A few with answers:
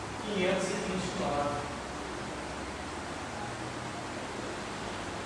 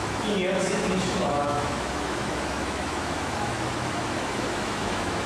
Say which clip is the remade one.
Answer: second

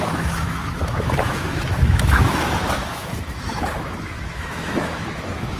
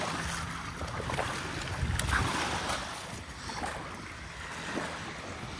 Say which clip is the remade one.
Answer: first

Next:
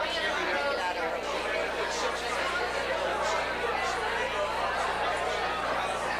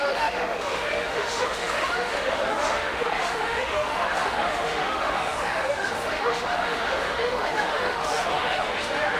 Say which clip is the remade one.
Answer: second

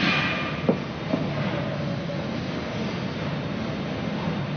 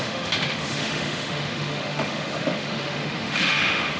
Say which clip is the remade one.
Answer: second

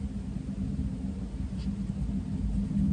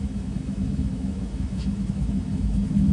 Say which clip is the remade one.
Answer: second